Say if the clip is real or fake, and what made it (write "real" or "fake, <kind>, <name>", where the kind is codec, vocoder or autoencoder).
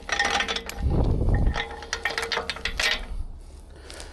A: real